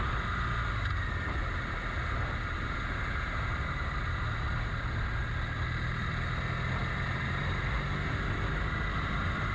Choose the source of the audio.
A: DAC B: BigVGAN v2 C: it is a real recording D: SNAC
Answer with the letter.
C